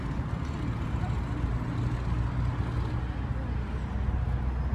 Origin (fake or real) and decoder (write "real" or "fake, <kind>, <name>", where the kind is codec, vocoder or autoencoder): real